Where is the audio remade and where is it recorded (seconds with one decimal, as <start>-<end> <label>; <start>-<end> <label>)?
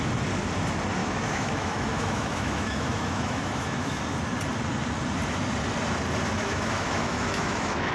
0.0-1.0 recorded; 1.0-4.0 remade; 4.0-6.4 recorded; 6.4-7.9 remade